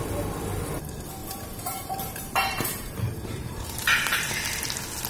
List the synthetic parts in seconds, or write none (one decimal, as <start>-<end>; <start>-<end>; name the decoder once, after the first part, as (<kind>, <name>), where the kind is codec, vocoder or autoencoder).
1.2-4.3 (vocoder, BigVGAN v2)